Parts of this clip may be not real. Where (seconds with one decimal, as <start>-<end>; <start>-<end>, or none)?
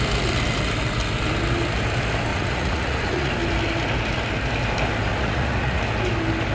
2.3-3.3; 5.1-5.8